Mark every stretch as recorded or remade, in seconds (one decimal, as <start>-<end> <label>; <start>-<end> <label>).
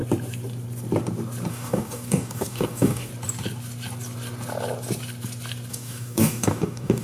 0.0-1.5 recorded; 1.5-3.1 remade; 3.1-5.7 recorded; 5.7-7.0 remade